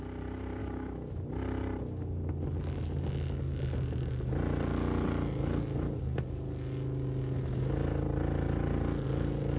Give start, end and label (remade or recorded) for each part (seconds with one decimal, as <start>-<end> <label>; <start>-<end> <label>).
0.0-0.6 recorded; 0.6-1.1 remade; 1.1-9.6 recorded